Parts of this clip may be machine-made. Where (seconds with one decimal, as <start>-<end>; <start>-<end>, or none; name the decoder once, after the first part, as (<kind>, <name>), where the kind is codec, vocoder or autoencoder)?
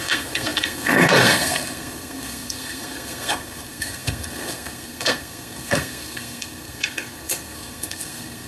0.0-8.5 (codec, SNAC)